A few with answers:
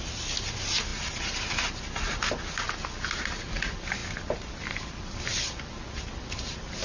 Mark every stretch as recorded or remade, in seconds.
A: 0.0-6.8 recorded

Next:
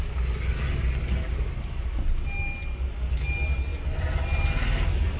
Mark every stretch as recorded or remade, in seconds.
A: 0.0-5.2 recorded

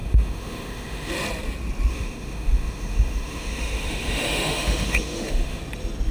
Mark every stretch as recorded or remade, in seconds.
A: 0.0-1.1 remade; 1.1-1.9 recorded; 1.9-5.6 remade; 5.6-6.1 recorded

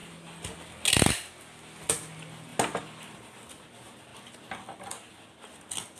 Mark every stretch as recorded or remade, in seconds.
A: 0.0-6.0 recorded

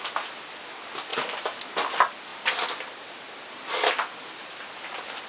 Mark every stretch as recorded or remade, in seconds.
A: 0.0-5.3 recorded

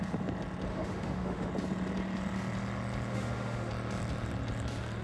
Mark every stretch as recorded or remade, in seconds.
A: 0.0-0.7 recorded; 0.7-1.5 remade; 1.5-3.1 recorded; 3.1-3.7 remade; 3.7-5.0 recorded

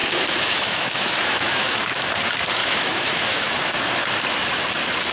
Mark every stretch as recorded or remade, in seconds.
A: 0.0-1.8 remade; 1.8-2.6 recorded; 2.6-3.5 remade; 3.5-5.1 recorded

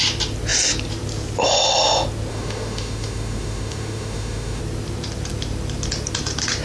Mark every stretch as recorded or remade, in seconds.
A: 0.0-2.3 recorded; 2.3-4.6 remade; 4.6-6.6 recorded